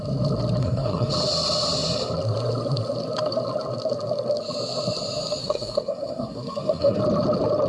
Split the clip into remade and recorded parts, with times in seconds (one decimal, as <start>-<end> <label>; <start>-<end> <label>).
0.0-0.6 recorded; 0.6-1.1 remade; 1.1-5.4 recorded; 5.4-7.0 remade; 7.0-7.7 recorded